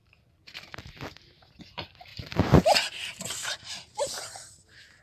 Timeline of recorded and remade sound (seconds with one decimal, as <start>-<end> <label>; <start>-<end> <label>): 0.0-2.1 recorded; 2.1-5.0 remade